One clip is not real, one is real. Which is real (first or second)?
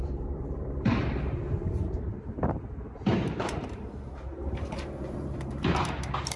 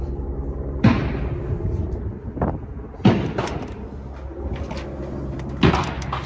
second